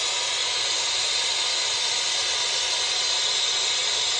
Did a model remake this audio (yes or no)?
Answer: no